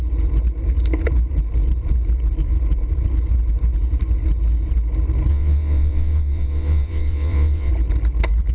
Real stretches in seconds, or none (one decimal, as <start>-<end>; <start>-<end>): 0.0-5.3; 7.7-8.5